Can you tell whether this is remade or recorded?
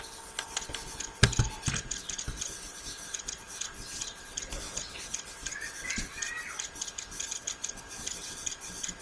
recorded